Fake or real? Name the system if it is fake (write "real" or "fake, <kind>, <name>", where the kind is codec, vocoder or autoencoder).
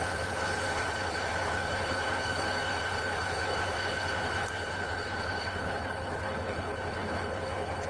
fake, codec, HILCodec